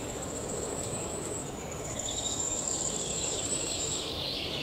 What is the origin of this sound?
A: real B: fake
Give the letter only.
B